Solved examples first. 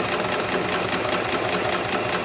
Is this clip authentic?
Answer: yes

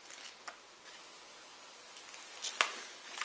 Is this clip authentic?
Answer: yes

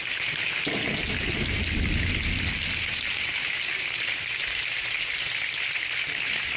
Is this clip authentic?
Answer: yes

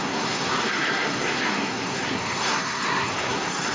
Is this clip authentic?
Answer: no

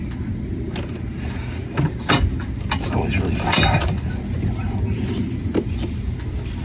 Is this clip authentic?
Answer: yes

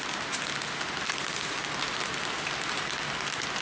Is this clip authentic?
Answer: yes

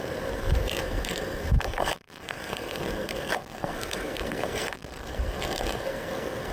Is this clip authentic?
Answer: no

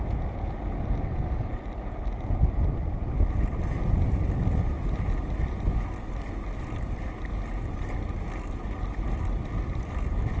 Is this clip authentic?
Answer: yes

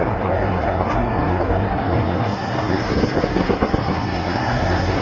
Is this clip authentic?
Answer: no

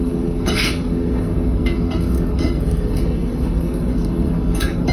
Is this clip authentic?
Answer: no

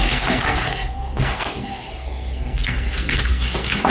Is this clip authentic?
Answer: no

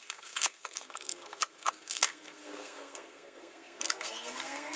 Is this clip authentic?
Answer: no